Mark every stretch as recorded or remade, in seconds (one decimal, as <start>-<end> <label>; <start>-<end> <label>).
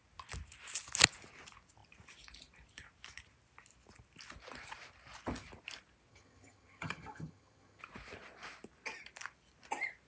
0.0-6.1 recorded; 6.1-7.8 remade; 7.8-10.1 recorded